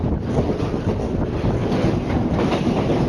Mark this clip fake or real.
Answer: real